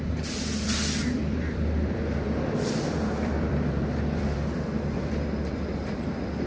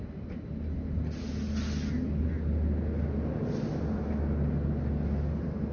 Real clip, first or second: second